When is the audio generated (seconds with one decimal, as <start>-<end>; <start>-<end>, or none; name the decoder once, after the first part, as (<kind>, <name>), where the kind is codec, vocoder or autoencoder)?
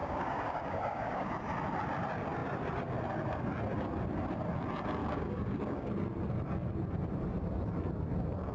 0.0-1.3 (codec, DAC); 5.0-5.9